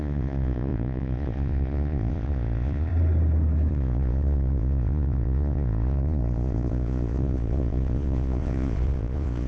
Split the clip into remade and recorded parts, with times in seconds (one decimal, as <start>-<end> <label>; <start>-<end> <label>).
0.0-2.9 remade; 2.9-3.7 recorded; 3.7-9.5 remade